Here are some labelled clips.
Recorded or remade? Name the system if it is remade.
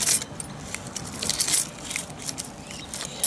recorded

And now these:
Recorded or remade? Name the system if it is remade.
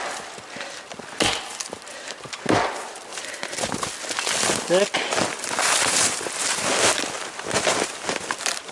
recorded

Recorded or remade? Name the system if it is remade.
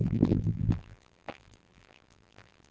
remade, vocoder, BigVGAN v2